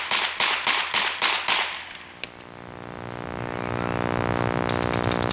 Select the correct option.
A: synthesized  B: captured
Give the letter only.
B